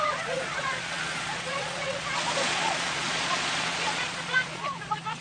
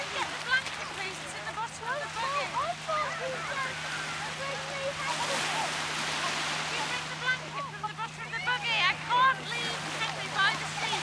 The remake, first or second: first